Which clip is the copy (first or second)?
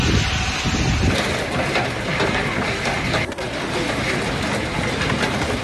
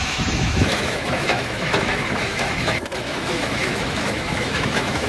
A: second